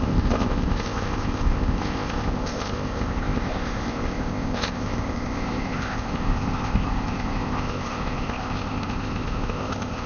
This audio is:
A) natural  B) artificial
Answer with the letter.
B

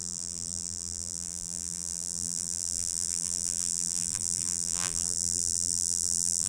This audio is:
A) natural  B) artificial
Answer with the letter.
B